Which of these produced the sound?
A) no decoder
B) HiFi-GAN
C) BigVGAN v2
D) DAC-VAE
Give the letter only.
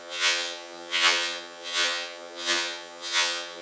B